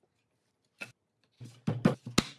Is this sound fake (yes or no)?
no